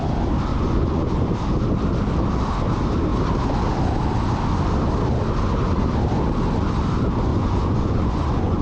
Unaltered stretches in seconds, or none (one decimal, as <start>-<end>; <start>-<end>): 0.0-0.5; 1.3-7.3